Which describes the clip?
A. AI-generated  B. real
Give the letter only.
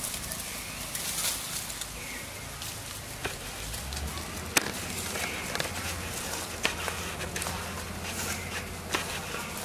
B